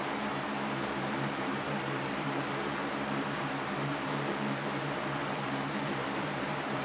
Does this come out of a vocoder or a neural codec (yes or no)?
yes